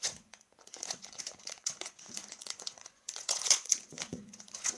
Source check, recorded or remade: remade